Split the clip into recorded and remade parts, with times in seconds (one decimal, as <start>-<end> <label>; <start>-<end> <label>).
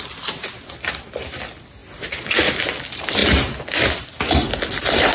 0.0-5.1 recorded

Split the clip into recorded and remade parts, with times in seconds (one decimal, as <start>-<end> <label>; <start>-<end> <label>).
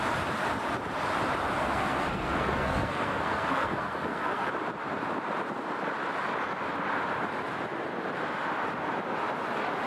0.0-1.6 recorded; 1.6-4.5 remade; 4.5-9.9 recorded